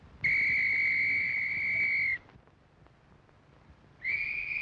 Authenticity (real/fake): real